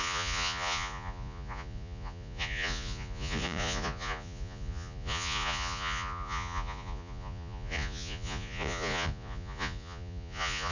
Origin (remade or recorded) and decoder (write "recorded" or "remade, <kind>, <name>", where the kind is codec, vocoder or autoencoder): remade, vocoder, Vocos